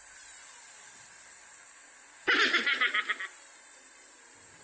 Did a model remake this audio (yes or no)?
yes